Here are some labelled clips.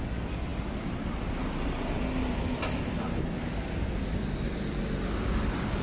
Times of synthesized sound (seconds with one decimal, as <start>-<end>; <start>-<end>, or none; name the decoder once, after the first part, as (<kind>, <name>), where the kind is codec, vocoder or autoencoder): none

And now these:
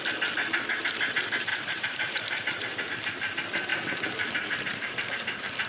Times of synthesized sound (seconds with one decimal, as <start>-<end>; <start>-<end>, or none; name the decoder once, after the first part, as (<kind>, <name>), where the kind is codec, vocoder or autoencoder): 1.5-2.9 (vocoder, BigVGAN v2); 3.7-5.1

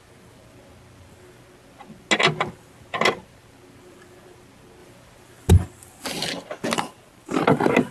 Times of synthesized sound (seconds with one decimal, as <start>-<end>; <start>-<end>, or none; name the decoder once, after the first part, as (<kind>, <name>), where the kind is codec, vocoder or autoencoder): none

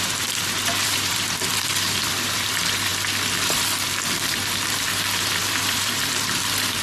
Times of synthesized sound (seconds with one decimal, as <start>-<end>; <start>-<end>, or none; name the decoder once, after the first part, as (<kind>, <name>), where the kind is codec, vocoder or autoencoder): 0.0-2.9 (vocoder, BigVGAN v2); 5.3-6.8

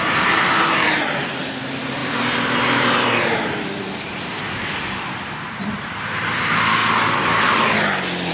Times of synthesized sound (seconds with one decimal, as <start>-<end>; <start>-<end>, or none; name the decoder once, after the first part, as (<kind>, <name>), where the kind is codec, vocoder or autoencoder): 0.0-6.8 (vocoder, BigVGAN v2)

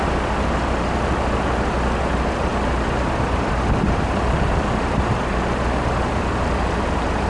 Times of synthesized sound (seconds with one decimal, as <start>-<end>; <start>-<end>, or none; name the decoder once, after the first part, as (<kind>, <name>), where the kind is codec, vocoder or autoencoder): 2.5-6.1 (vocoder, BigVGAN v2)

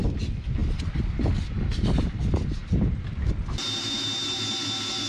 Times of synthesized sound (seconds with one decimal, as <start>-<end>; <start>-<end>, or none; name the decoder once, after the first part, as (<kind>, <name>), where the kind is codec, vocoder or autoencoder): 0.6-1.3 (vocoder, BigVGAN v2)

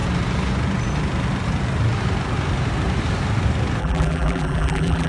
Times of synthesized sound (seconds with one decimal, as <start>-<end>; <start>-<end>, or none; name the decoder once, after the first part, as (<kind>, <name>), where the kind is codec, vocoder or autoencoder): 3.8-5.1 (vocoder, BigVGAN v2)